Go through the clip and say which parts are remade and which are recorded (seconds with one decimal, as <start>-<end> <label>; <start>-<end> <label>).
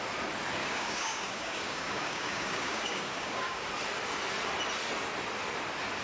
0.0-0.6 recorded; 0.6-3.7 remade; 3.7-6.0 recorded